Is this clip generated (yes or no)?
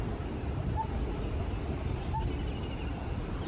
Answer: no